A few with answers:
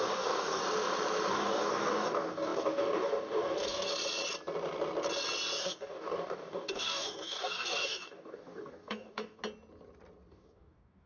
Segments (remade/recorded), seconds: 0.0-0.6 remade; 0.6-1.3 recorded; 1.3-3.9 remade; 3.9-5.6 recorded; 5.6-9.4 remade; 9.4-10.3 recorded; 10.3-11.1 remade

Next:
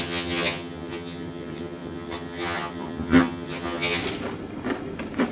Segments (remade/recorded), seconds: 0.0-4.0 remade; 4.0-5.3 recorded

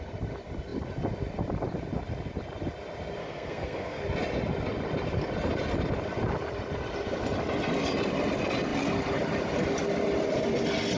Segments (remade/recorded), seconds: 0.0-3.2 recorded; 3.2-4.0 remade; 4.0-11.0 recorded

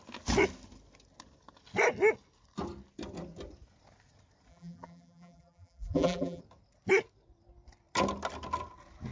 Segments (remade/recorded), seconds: 0.0-4.5 recorded; 4.5-6.4 remade; 6.4-9.1 recorded

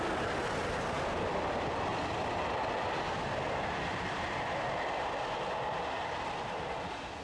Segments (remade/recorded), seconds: 0.0-7.2 recorded

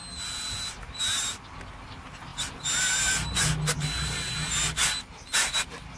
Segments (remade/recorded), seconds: 0.0-6.0 recorded

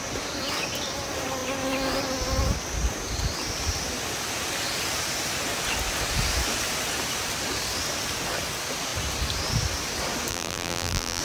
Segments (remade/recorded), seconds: 0.0-10.3 recorded; 10.3-11.2 remade

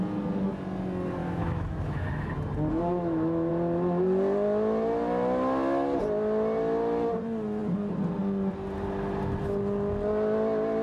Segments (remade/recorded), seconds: 0.0-1.2 recorded; 1.2-2.3 remade; 2.3-2.7 recorded; 2.7-3.5 remade; 3.5-10.8 recorded